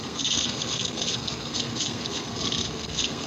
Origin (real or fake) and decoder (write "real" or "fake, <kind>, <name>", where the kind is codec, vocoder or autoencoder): fake, codec, SNAC